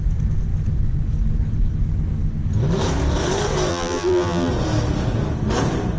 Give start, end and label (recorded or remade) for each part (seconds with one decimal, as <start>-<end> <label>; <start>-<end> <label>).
0.0-3.7 recorded; 3.7-4.5 remade; 4.5-6.0 recorded